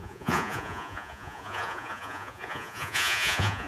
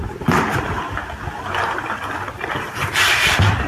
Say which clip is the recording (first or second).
second